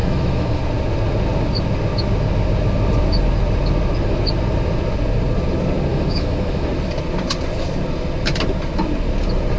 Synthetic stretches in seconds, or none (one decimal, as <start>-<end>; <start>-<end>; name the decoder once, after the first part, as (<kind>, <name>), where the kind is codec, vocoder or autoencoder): 0.0-0.6 (autoencoder, DAC-VAE); 5.9-6.7